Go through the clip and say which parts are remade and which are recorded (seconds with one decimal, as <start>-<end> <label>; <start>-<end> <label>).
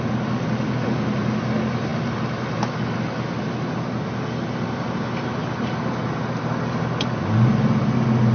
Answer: 0.0-8.3 recorded